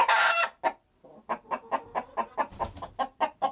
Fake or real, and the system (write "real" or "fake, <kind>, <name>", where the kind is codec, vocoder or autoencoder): real